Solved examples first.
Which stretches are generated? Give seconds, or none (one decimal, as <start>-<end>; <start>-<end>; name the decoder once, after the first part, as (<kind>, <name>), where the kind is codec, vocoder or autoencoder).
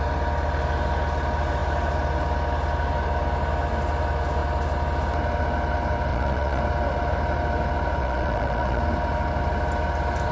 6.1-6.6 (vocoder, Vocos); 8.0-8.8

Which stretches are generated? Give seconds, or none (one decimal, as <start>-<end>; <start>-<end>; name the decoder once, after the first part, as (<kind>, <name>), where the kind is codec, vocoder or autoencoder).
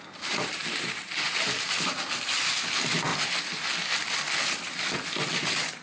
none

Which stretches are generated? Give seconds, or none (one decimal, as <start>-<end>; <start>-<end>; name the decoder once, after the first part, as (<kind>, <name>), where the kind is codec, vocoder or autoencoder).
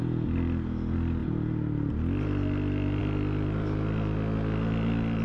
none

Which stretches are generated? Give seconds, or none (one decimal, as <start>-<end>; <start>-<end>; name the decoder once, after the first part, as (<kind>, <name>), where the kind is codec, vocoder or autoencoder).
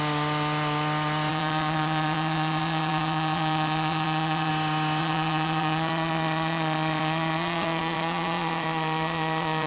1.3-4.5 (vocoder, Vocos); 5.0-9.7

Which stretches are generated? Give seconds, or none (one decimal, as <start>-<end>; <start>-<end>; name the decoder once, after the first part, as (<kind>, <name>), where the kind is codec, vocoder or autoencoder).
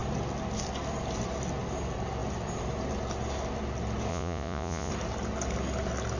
4.1-4.9 (vocoder, Vocos)